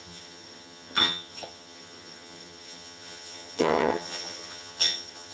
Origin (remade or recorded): remade